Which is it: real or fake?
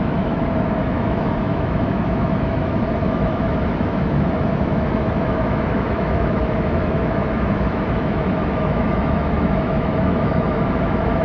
fake